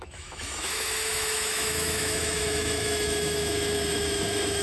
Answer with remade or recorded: remade